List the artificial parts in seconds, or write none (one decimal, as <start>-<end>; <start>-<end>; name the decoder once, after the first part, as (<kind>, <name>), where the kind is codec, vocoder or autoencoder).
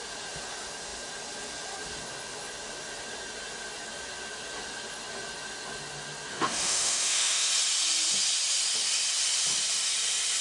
6.3-7.5 (autoencoder, DAC-VAE)